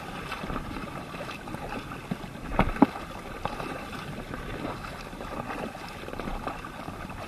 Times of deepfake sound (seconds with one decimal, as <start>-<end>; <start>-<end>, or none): none